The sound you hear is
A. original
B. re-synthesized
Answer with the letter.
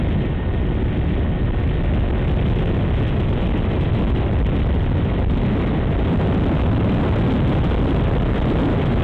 A